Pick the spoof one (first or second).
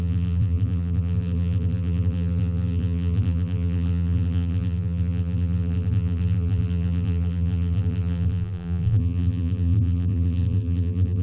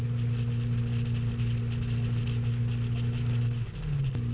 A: first